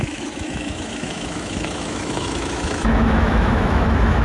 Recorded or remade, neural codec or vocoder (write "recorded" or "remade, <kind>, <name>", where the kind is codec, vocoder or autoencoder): remade, autoencoder, DAC-VAE